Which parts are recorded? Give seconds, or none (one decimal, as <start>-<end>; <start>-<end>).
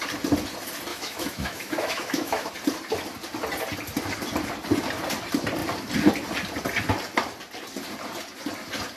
0.0-0.9; 2.5-9.0